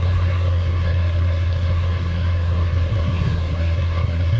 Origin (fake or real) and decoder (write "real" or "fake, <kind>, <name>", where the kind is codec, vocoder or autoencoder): fake, codec, SNAC